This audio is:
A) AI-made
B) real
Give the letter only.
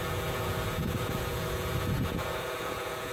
A